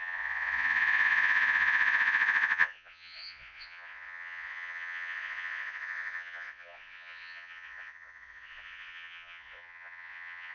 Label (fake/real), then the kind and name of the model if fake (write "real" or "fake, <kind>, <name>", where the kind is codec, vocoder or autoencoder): fake, vocoder, Vocos